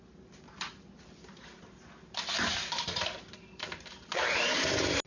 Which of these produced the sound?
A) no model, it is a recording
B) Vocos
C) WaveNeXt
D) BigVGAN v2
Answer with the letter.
A